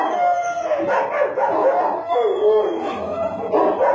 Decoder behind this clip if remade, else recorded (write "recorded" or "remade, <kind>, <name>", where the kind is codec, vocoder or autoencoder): recorded